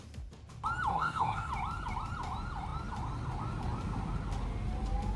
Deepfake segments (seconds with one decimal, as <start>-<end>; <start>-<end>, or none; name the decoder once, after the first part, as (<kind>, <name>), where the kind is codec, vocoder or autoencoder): 0.9-1.5 (codec, SNAC)